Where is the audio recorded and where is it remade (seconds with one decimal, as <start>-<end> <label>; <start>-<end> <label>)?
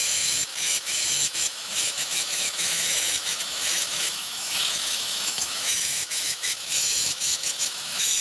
0.0-8.2 remade